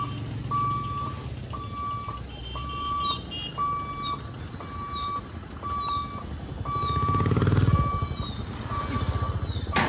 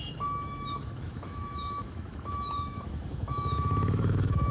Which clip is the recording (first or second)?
first